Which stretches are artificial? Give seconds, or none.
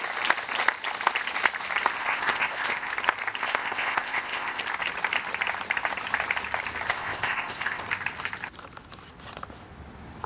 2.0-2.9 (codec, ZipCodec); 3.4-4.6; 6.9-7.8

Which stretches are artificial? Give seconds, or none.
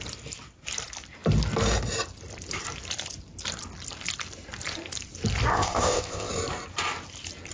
5.5-6.3 (codec, ZipCodec)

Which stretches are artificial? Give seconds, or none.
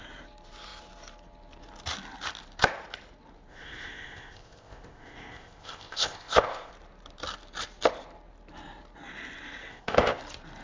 3.5-6.7 (codec, ZipCodec); 9.6-10.2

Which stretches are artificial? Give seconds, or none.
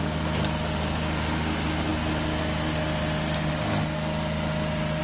none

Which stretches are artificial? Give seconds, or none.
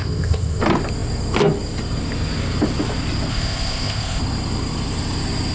0.0-0.6 (codec, ZipCodec); 3.3-4.2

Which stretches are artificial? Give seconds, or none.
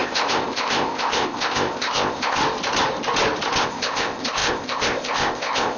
0.0-2.4 (codec, ZipCodec); 3.6-5.8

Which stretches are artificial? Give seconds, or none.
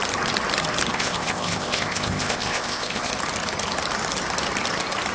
0.9-3.1 (codec, ZipCodec)